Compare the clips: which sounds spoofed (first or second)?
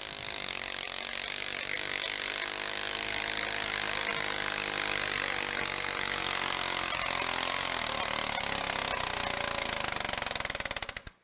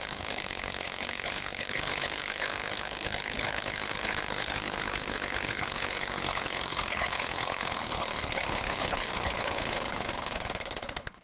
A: second